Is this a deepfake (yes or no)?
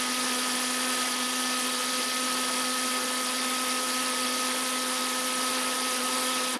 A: no